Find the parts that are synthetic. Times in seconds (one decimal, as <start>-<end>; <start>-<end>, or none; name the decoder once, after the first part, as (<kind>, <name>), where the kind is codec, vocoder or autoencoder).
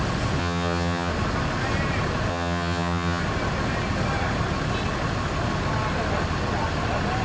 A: 0.4-1.1 (vocoder, HiFi-GAN); 2.3-3.2